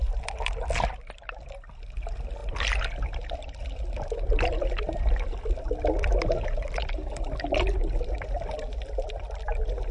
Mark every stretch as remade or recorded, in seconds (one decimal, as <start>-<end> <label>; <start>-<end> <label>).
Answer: 0.0-9.9 recorded